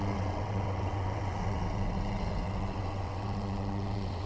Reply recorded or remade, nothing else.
remade